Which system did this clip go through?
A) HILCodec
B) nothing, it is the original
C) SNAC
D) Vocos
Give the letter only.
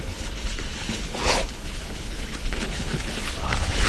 A